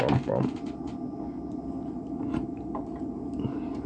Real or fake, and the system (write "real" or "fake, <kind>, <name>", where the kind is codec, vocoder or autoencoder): real